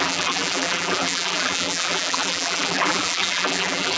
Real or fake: fake